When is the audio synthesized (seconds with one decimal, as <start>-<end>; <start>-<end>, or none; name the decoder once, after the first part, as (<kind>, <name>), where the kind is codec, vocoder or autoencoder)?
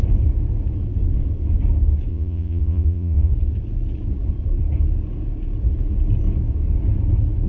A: 2.1-3.3 (vocoder, Vocos)